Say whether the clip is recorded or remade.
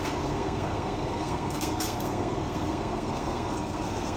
remade